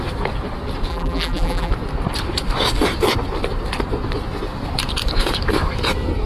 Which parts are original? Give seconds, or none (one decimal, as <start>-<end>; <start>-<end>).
0.0-0.9; 1.7-6.3